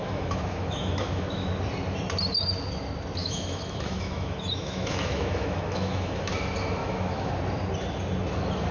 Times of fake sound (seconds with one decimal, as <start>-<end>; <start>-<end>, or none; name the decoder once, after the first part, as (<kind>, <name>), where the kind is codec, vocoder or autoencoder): 0.0-1.5 (autoencoder, DAC-VAE); 3.2-6.3; 6.8-7.3